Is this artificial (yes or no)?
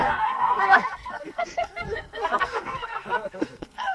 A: yes